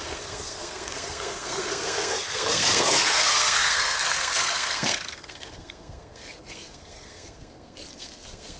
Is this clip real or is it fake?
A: fake